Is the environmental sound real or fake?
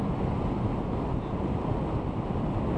real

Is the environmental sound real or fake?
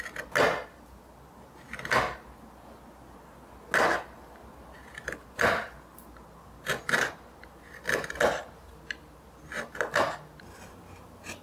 real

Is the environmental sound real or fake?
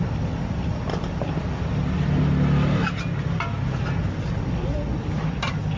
real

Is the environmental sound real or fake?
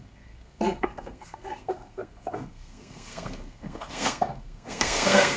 fake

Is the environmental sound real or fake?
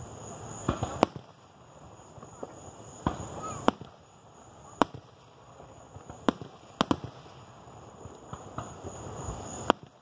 real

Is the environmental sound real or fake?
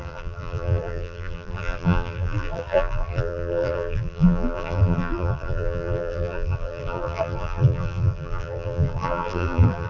fake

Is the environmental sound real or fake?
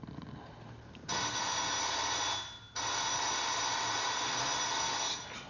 real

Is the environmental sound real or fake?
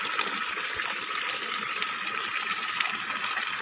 real